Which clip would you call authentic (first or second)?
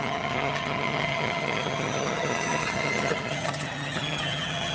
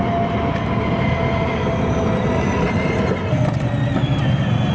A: second